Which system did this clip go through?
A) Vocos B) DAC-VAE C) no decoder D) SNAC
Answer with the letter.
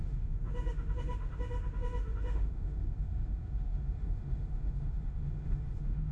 B